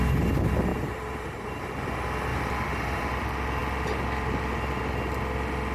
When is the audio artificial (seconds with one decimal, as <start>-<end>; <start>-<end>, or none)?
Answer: 0.7-1.6; 2.3-3.1